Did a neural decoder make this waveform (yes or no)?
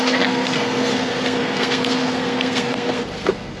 yes